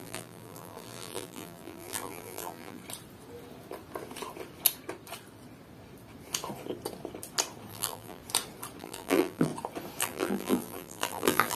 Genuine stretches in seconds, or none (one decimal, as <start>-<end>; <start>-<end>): 2.8-7.7; 8.2-8.8; 9.5-10.0